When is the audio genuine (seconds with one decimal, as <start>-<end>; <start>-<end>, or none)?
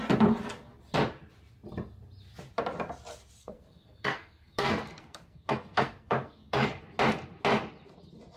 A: 0.0-3.4; 6.8-8.4